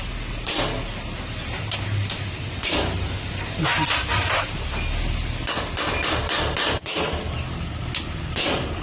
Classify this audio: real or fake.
real